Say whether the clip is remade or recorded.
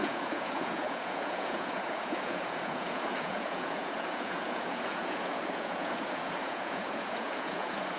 remade